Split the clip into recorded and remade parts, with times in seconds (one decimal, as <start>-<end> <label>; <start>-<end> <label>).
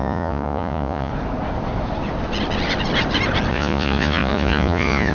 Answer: 0.0-1.1 remade; 1.1-3.5 recorded; 3.5-5.1 remade